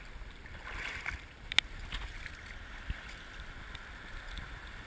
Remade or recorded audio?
recorded